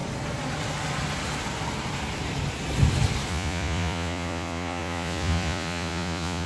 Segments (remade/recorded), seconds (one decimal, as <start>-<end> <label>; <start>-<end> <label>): 0.0-3.3 recorded; 3.3-6.5 remade